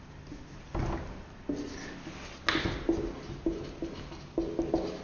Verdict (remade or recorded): recorded